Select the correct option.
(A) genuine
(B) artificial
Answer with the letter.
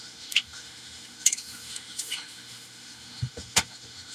B